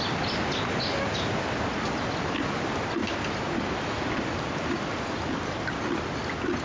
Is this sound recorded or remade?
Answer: recorded